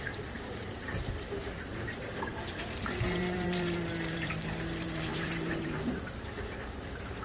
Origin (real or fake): fake